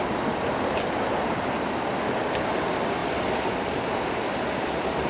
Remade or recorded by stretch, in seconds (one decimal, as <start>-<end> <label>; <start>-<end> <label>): 0.0-5.1 recorded